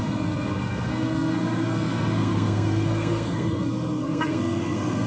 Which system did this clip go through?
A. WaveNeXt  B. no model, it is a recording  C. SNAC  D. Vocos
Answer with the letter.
C